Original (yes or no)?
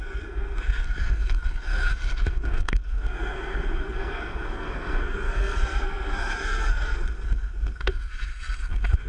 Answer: no